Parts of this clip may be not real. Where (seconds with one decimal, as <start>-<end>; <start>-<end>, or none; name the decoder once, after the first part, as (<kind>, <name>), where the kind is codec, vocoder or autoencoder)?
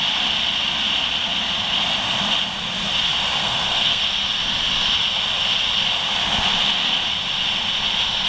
3.4-4.0 (codec, SNAC)